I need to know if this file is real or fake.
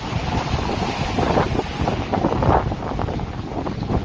real